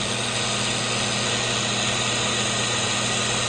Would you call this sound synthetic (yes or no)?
no